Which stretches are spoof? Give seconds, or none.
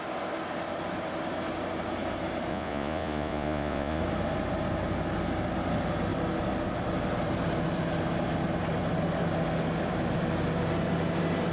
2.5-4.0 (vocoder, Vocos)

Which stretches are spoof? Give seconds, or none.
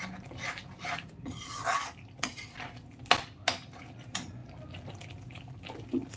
none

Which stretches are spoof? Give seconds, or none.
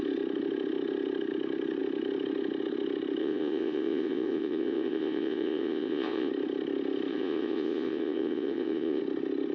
3.2-6.3 (vocoder, Vocos); 7.1-9.0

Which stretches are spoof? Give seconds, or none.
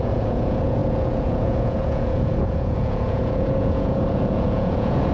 0.0-5.1 (vocoder, Vocos)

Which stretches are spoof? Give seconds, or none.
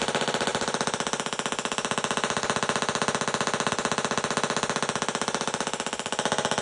none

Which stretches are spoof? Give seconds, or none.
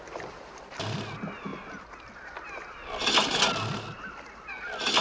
none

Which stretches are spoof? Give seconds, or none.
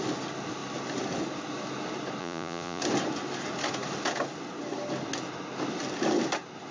2.2-2.8 (vocoder, Vocos)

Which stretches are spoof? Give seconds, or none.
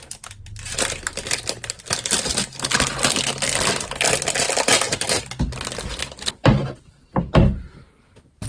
none